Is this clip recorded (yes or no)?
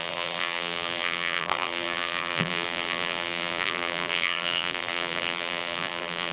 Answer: no